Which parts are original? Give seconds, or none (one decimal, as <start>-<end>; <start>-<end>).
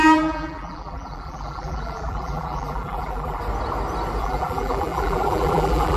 3.4-4.2